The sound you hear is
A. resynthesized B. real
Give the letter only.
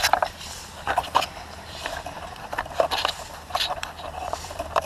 A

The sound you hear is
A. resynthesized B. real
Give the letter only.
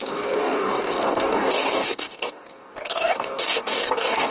A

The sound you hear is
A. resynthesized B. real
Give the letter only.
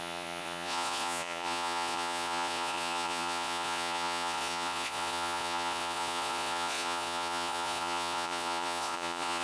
A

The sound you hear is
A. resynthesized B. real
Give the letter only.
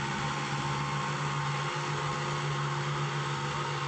B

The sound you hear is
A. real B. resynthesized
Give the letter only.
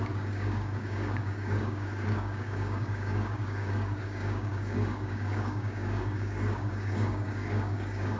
B